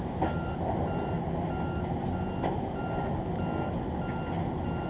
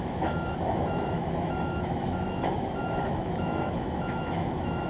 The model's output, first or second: second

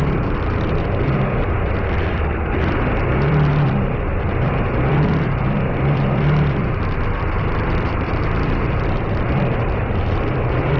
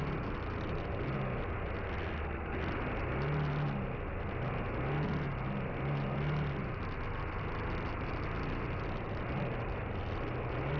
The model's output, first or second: first